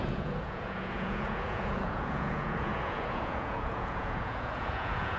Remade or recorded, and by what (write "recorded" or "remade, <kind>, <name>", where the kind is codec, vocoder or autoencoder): remade, vocoder, Vocos